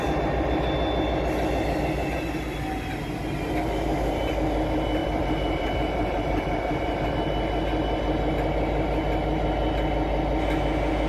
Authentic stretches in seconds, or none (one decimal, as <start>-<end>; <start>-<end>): 0.0-5.0; 7.1-11.1